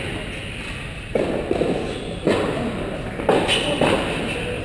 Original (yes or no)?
yes